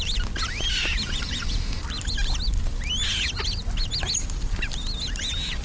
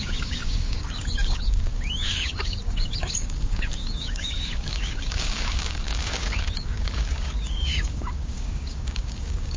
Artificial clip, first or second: second